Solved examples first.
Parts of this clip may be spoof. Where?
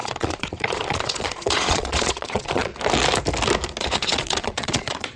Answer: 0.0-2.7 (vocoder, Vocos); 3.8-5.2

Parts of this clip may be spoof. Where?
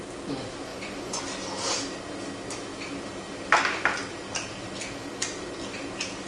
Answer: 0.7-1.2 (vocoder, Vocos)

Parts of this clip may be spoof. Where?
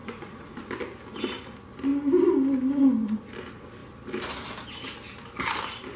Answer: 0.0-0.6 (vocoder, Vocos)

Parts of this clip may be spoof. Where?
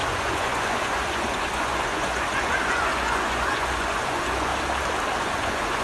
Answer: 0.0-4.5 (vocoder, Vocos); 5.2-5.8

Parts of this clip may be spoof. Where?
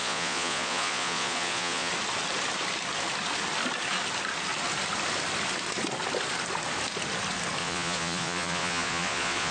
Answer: 0.0-1.9 (vocoder, Vocos); 7.6-9.5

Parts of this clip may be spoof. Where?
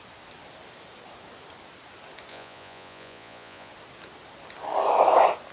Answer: 2.3-3.7 (vocoder, Vocos)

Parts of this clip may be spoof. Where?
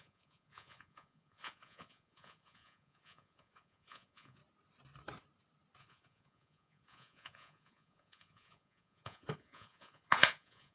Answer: 0.0-4.4 (vocoder, Vocos); 5.8-10.7